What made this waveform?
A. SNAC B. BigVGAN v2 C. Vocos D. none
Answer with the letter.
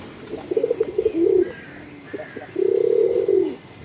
D